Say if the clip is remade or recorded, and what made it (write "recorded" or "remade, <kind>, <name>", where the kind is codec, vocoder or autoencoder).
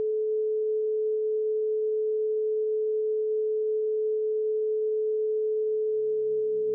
recorded